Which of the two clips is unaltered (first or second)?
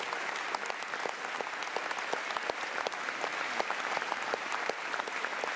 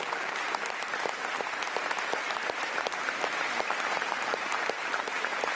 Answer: first